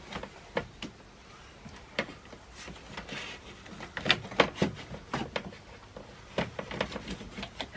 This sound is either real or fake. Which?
real